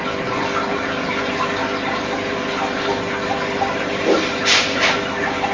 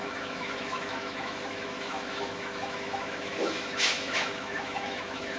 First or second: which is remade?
second